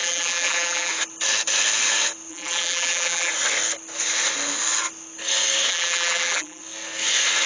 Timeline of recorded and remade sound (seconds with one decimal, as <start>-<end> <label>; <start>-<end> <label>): 0.0-0.9 remade; 0.9-2.3 recorded; 2.3-3.3 remade; 3.3-5.7 recorded; 5.7-6.6 remade; 6.6-7.5 recorded